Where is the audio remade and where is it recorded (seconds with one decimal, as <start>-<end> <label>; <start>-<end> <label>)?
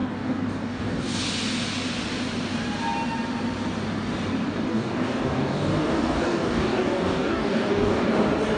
0.0-1.2 remade; 1.2-4.7 recorded; 4.7-8.1 remade; 8.1-8.6 recorded